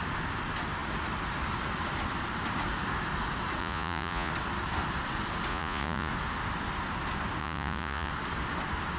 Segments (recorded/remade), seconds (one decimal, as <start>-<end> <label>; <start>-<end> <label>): 0.0-3.6 recorded; 3.6-4.3 remade; 4.3-5.5 recorded; 5.5-6.1 remade; 6.1-7.4 recorded; 7.4-8.1 remade; 8.1-9.0 recorded